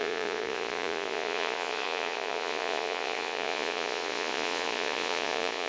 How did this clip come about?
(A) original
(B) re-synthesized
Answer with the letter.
B